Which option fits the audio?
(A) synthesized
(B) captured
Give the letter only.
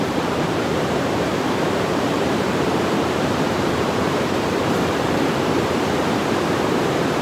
A